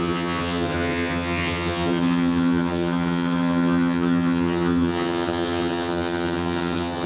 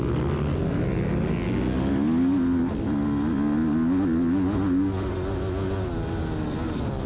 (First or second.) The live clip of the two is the second